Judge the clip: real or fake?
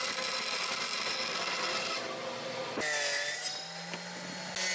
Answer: real